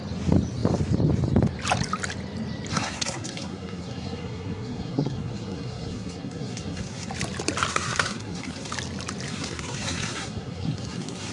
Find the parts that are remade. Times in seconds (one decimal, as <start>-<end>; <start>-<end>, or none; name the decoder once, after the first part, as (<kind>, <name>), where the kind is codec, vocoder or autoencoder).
2.7-7.1 (codec, SNAC); 7.7-8.7; 9.3-11.3